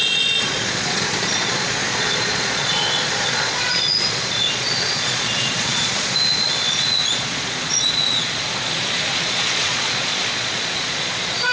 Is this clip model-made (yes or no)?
yes